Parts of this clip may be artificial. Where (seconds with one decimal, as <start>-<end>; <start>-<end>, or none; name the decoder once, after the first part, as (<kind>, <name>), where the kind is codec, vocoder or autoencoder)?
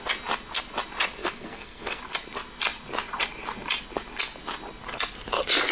1.2-2.0 (codec, SNAC)